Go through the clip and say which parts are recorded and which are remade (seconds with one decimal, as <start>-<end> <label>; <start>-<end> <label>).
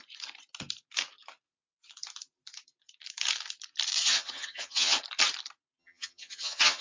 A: 0.0-4.0 recorded; 4.0-5.0 remade; 5.0-5.8 recorded; 5.8-6.8 remade